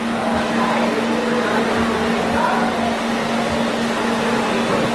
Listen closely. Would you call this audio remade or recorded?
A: recorded